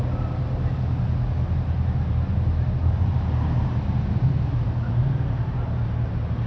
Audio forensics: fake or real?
real